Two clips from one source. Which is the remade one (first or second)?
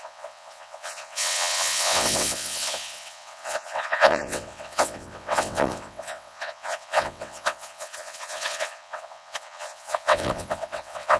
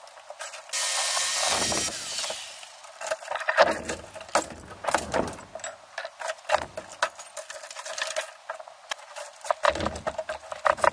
first